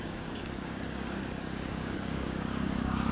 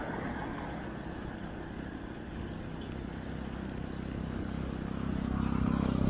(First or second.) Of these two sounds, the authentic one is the second